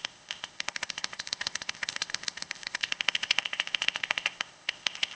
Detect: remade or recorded remade